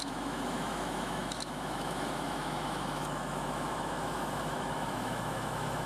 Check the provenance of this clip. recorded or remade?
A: remade